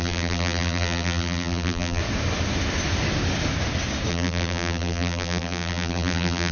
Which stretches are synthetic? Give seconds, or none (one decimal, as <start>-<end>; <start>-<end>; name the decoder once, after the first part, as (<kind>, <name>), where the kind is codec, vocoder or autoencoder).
0.0-2.0 (vocoder, BigVGAN v2); 4.1-6.5